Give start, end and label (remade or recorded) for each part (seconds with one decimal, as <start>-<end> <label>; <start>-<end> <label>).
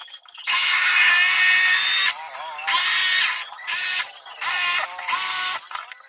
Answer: 0.0-1.1 remade; 1.1-6.1 recorded